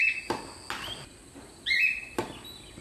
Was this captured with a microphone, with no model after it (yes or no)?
yes